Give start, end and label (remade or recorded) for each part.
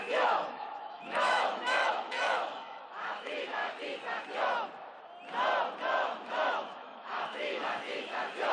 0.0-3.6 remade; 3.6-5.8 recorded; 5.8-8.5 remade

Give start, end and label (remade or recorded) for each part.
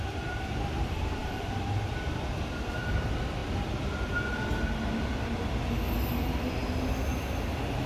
0.0-7.9 recorded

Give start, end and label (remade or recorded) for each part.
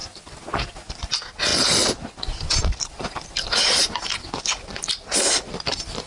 0.0-6.1 recorded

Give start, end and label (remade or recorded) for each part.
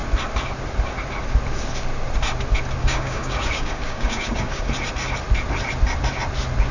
0.0-2.8 recorded; 2.8-4.7 remade; 4.7-6.7 recorded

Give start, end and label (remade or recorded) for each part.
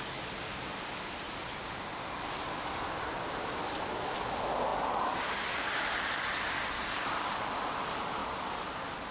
0.0-9.1 recorded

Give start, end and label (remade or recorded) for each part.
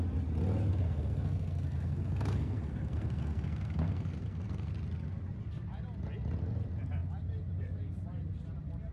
0.0-0.7 recorded; 0.7-4.7 remade; 4.7-8.9 recorded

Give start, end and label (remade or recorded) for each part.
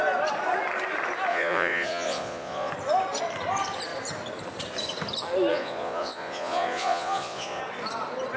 0.0-1.3 recorded; 1.3-2.7 remade; 2.7-5.5 recorded; 5.5-7.6 remade; 7.6-8.4 recorded